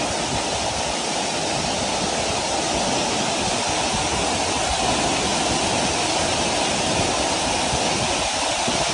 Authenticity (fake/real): real